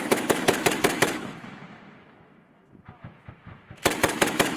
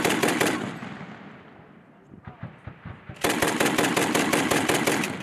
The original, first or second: second